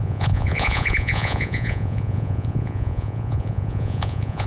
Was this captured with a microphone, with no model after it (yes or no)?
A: no